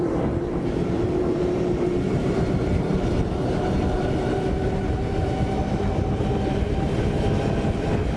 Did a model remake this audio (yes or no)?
yes